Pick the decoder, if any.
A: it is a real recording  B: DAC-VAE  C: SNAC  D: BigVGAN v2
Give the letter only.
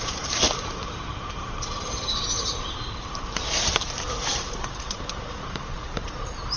D